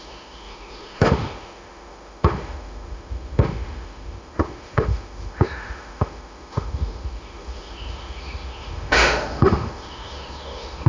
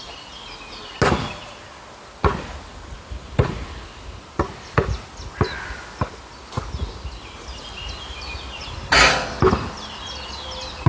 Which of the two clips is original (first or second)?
second